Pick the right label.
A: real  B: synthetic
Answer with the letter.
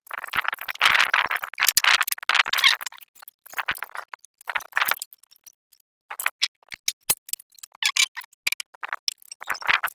A